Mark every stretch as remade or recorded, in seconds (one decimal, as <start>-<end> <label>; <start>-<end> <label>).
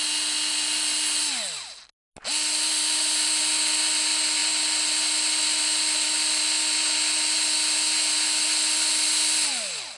0.0-10.0 recorded